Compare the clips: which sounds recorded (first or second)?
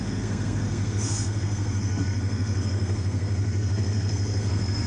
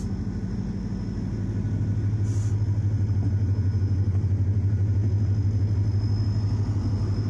second